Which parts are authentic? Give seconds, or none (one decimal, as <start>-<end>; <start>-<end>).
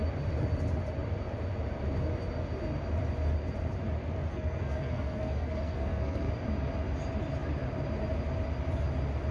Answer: 0.0-4.3; 6.3-9.3